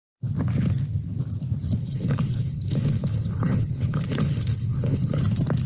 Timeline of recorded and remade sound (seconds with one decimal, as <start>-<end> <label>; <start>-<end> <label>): 0.0-1.8 recorded; 1.8-5.2 remade; 5.2-5.7 recorded